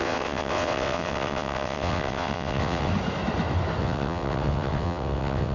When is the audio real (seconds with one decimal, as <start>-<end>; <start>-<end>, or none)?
2.9-3.8